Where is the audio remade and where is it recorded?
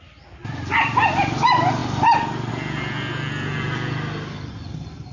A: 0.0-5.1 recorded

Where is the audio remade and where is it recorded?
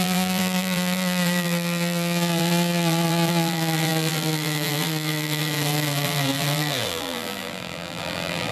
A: 0.0-8.5 remade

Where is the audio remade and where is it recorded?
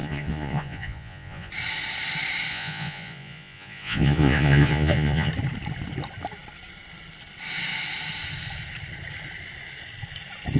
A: 0.0-1.5 remade; 1.5-2.5 recorded; 2.5-5.3 remade; 5.3-10.6 recorded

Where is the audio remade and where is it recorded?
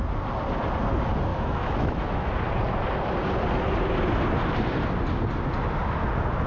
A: 0.0-1.3 recorded; 1.3-2.3 remade; 2.3-6.5 recorded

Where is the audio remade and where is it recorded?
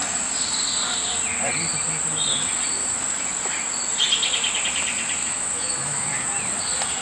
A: 0.0-5.2 recorded; 5.2-6.1 remade; 6.1-7.0 recorded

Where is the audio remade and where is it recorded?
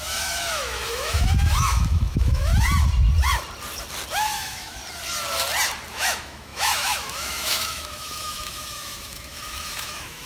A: 0.0-2.5 remade; 2.5-4.1 recorded; 4.1-4.8 remade; 4.8-5.9 recorded; 5.9-10.3 remade